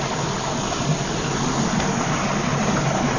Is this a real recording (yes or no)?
yes